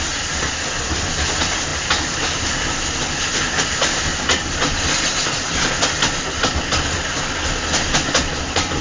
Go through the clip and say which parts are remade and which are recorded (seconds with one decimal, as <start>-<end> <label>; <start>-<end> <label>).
0.0-8.8 recorded